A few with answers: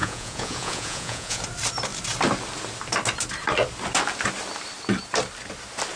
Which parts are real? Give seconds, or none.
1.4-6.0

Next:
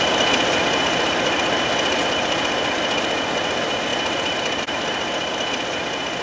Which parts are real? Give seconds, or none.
0.0-6.2